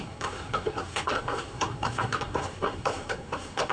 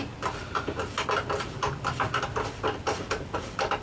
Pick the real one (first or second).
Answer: second